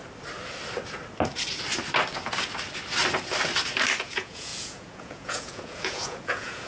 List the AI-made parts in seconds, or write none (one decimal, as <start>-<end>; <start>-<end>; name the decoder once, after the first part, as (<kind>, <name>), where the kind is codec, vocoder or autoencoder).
4.0-6.7 (vocoder, Vocos)